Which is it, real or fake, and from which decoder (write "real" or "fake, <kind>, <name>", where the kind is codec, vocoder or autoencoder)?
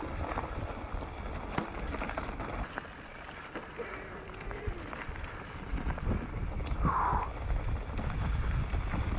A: real